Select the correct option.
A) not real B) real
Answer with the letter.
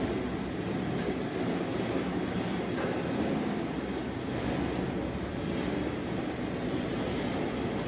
B